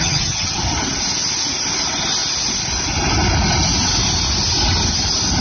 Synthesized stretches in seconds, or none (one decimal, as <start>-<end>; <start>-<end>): 0.0-0.6